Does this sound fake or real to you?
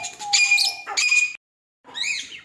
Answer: real